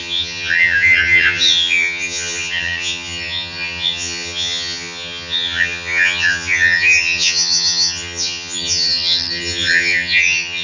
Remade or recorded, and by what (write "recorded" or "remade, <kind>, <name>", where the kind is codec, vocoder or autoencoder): remade, vocoder, HiFi-GAN